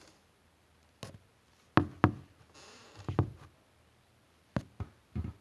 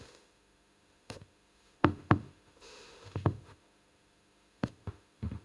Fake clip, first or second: second